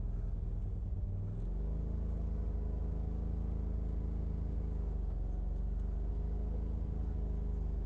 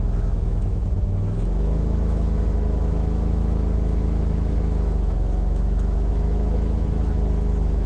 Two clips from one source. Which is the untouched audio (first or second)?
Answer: first